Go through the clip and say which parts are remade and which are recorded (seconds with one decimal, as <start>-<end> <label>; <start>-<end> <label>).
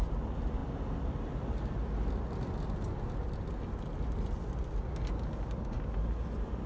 0.0-6.7 recorded